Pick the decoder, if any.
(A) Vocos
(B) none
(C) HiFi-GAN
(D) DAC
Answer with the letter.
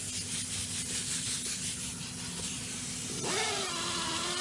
B